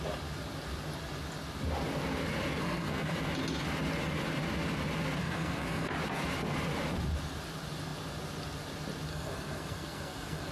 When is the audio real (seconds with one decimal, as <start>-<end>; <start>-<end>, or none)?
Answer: 0.0-2.6; 3.2-5.2; 5.9-9.1